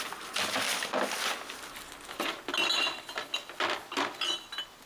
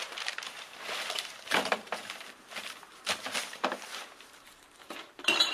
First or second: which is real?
first